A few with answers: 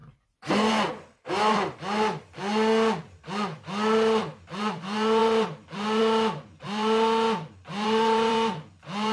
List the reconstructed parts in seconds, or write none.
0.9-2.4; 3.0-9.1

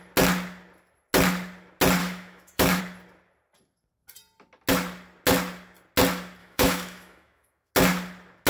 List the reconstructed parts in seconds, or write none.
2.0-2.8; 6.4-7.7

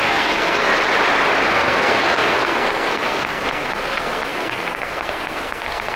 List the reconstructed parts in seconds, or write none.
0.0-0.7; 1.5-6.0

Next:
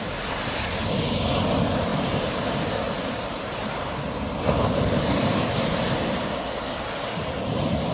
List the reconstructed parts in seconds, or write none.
1.9-6.2

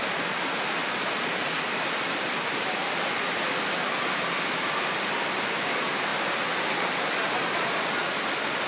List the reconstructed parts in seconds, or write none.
none

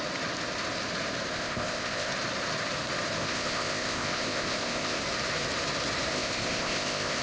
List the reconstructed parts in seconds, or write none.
1.3-2.1; 3.2-5.0; 6.1-7.2

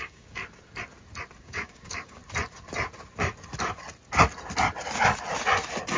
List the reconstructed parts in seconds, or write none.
0.0-0.4; 1.4-2.2

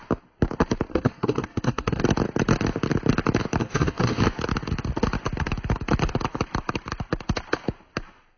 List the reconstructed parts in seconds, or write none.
0.9-2.0; 3.6-4.2